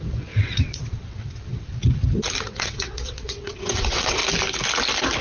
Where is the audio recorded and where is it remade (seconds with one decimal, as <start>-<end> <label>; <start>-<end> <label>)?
0.0-1.7 remade; 1.7-2.4 recorded; 2.4-4.2 remade; 4.2-5.2 recorded